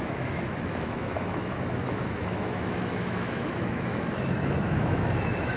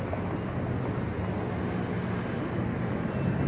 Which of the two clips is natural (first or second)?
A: second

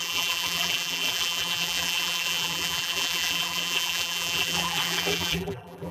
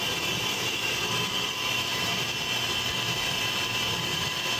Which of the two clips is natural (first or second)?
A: second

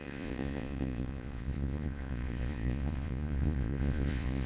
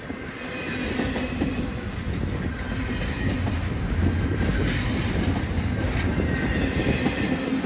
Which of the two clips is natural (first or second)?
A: second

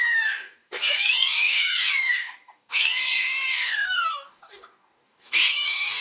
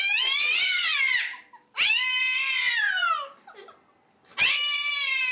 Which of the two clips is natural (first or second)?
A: second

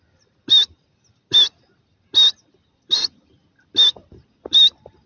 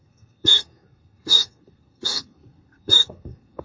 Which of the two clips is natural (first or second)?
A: first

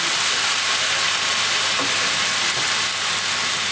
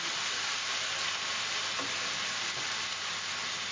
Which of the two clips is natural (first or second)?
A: first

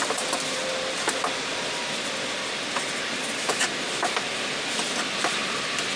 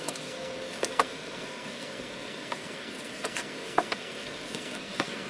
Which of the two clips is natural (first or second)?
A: first